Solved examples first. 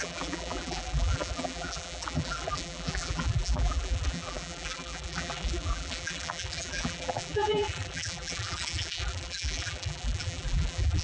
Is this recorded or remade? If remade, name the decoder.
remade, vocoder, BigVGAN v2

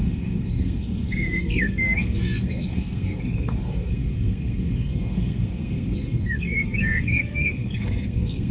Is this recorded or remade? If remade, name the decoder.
remade, codec, SNAC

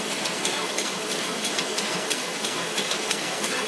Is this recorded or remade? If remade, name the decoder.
remade, codec, SNAC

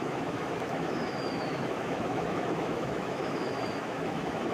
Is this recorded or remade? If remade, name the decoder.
remade, autoencoder, DAC-VAE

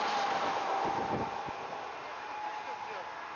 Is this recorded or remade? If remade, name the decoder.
recorded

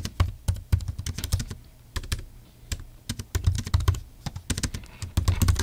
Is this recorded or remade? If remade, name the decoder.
recorded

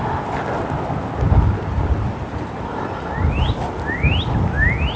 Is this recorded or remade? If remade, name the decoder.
recorded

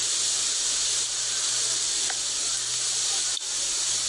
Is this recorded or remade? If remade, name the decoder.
recorded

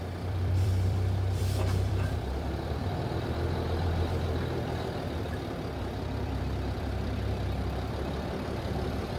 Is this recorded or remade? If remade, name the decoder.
remade, vocoder, BigVGAN v2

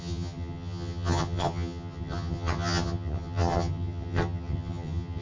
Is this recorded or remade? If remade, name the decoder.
remade, vocoder, HiFi-GAN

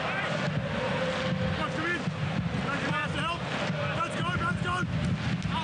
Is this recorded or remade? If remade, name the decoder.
recorded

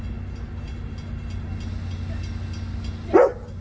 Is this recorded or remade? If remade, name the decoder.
recorded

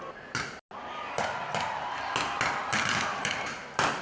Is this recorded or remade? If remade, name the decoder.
recorded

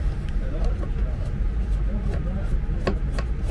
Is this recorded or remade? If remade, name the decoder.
recorded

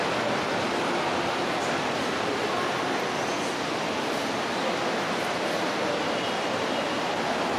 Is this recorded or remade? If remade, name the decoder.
recorded